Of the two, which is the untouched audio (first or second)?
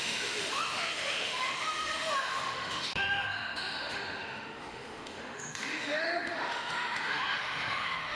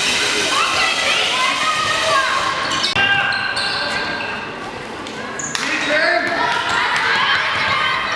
second